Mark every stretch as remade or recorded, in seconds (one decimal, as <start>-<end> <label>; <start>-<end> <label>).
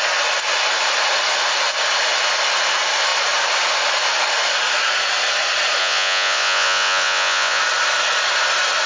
0.0-5.8 recorded; 5.8-7.6 remade; 7.6-8.9 recorded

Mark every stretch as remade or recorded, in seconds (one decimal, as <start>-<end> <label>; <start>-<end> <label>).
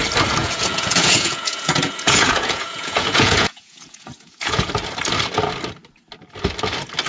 0.0-0.4 recorded; 0.4-4.7 remade; 4.7-7.1 recorded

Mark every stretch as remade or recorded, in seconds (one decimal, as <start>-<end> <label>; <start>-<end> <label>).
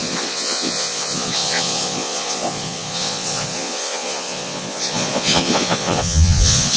0.0-6.8 remade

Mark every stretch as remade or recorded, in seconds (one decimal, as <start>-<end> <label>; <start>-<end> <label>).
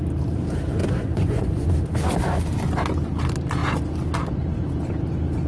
0.0-0.8 recorded; 0.8-1.7 remade; 1.7-5.5 recorded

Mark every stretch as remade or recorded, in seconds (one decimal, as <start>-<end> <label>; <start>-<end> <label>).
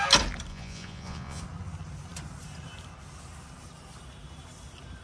0.0-0.5 recorded; 0.5-1.4 remade; 1.4-5.0 recorded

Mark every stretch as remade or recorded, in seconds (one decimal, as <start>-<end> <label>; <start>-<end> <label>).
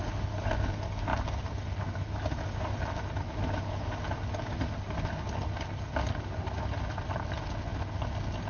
0.0-8.5 recorded